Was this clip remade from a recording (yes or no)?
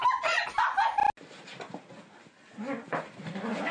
no